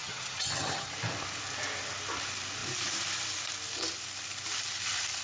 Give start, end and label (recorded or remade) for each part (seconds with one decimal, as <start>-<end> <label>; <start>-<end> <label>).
0.0-0.9 remade; 0.9-5.2 recorded